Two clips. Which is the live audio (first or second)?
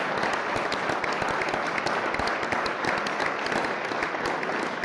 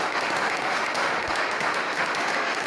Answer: first